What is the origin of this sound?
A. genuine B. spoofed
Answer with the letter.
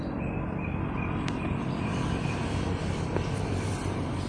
B